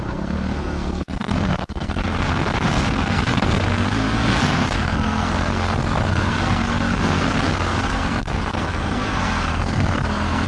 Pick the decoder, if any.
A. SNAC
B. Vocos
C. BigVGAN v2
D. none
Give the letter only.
A